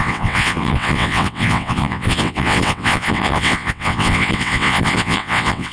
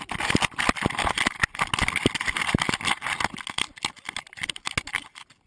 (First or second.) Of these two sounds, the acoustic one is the second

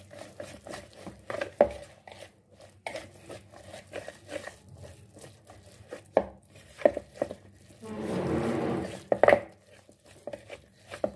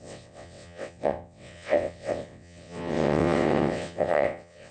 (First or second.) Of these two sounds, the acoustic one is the first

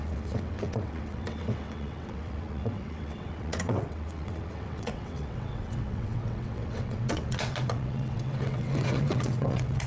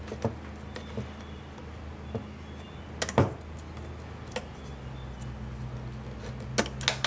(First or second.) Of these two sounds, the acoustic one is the second